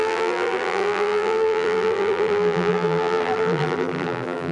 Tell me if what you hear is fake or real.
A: fake